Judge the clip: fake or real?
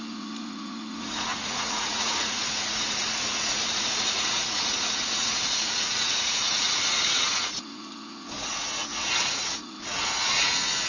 fake